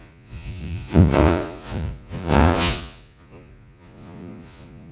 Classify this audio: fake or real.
fake